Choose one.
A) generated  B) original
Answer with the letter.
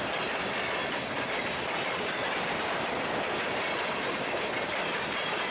B